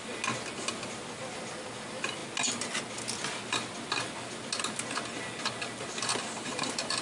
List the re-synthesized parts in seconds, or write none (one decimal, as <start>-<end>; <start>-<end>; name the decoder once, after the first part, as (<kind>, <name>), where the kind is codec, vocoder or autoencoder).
none